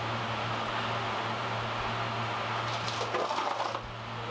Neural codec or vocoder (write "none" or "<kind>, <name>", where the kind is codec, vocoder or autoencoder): none